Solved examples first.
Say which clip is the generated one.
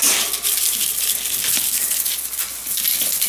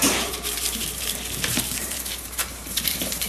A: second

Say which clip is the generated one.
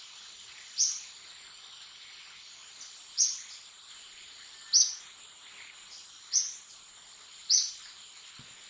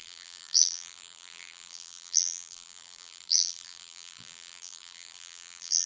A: second